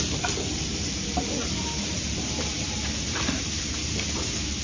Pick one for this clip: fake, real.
fake